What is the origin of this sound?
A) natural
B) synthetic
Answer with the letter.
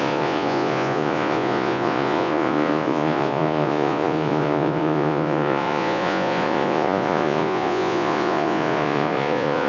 B